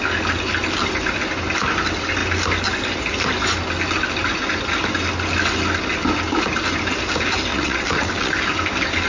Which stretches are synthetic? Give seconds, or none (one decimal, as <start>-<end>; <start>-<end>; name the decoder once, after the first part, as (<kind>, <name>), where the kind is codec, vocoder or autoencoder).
7.5-8.3 (vocoder, WaveNeXt)